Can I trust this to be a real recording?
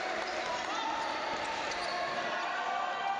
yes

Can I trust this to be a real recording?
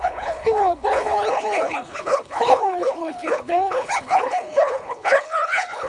no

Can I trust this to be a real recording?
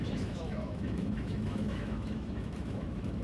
no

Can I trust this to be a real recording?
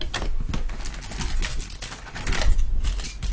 yes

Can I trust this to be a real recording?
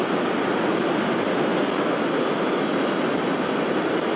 yes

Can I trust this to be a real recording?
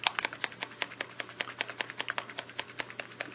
yes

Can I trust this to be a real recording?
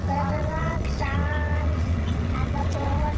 no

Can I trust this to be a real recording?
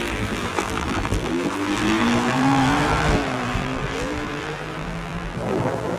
no